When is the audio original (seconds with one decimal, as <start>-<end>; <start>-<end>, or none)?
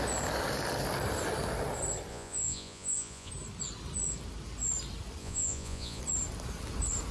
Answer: 0.0-2.1; 3.3-5.2; 6.0-7.1